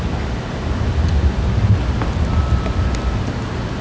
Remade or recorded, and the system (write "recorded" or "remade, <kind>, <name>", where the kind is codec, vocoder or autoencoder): recorded